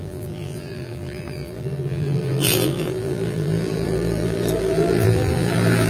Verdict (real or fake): fake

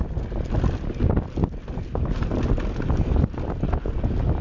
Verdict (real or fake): real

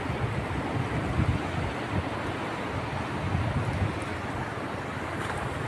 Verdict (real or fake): real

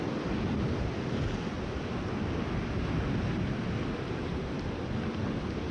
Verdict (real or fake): real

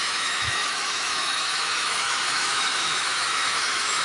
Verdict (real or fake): fake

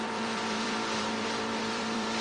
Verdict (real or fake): fake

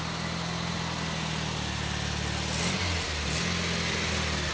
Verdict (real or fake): real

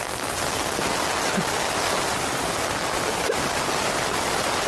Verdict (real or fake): real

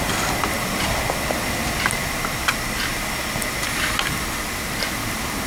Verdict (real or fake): real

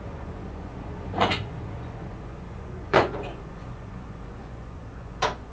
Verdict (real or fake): fake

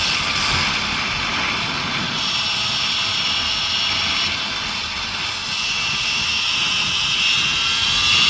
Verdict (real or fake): real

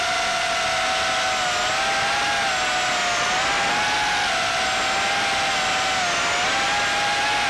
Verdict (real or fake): real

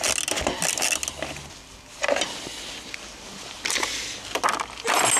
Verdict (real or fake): real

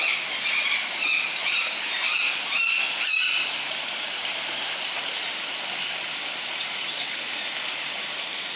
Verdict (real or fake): fake